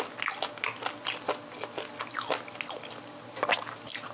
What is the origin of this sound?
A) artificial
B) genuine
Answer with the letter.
B